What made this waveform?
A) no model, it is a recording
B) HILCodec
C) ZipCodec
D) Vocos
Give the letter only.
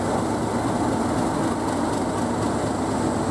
A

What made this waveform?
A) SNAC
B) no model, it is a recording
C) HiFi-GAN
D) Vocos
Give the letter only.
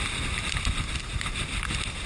B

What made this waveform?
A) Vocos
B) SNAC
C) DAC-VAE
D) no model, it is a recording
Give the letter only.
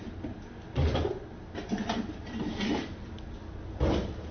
D